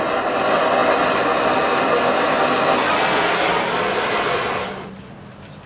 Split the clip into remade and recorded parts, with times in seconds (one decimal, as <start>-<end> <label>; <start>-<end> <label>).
0.0-5.7 recorded